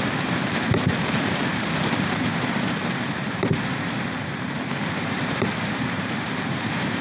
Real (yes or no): no